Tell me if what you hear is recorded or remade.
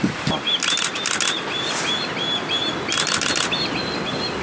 recorded